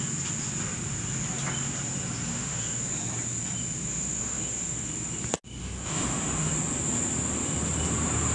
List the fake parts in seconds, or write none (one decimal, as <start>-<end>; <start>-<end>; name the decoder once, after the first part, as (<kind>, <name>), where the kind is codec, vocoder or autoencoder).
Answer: 2.3-2.9 (autoencoder, DAC-VAE); 3.8-4.9; 5.6-6.5